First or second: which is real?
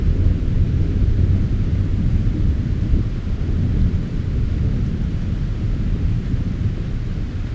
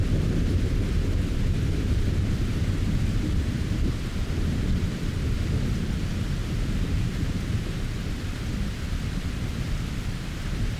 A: first